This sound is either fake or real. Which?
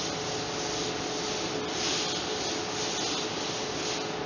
real